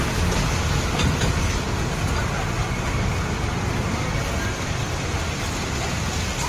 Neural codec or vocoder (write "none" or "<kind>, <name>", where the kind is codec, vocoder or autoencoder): none